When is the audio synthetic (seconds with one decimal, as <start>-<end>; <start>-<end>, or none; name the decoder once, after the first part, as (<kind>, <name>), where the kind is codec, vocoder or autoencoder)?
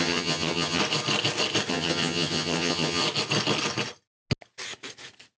0.0-0.8 (vocoder, HiFi-GAN); 1.7-3.0